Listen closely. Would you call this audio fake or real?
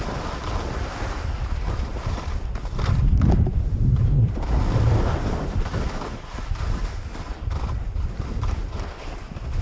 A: real